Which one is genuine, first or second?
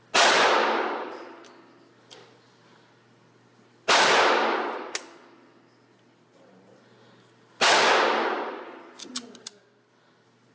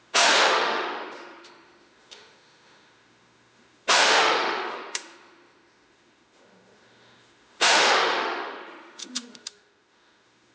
first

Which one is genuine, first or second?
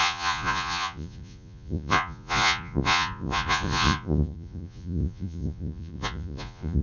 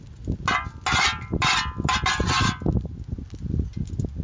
second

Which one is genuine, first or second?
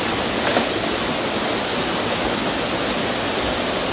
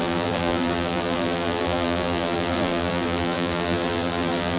first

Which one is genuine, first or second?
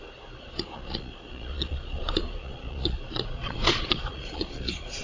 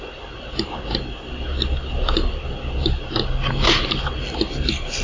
second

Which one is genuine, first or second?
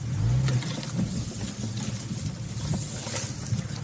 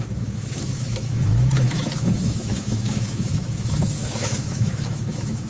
first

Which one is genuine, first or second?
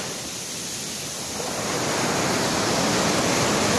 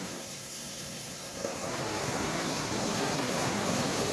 first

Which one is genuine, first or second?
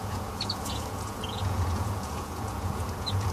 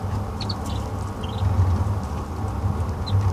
second